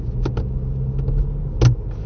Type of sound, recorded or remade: recorded